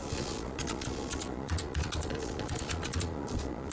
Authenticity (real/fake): fake